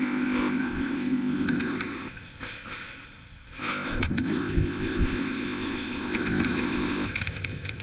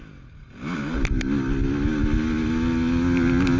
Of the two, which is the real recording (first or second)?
second